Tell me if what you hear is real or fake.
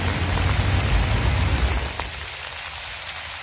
real